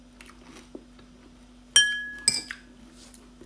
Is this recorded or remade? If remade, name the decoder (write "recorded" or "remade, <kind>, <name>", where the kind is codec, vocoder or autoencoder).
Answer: recorded